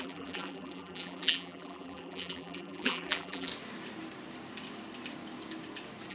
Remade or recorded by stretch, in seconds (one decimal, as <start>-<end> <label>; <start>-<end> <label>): 0.0-3.5 remade; 3.5-6.1 recorded